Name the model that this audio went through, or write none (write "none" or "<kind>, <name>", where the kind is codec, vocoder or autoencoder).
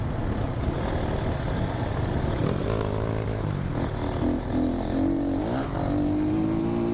none